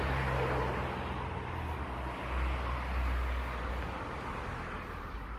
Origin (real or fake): real